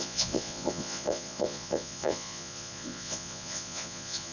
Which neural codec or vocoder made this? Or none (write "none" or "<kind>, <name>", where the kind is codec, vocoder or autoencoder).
vocoder, Vocos